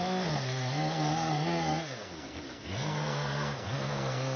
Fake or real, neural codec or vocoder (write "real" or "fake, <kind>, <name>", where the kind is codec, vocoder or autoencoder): fake, codec, SNAC